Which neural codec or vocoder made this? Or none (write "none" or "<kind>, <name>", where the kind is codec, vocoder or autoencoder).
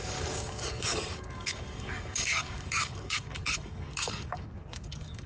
codec, DAC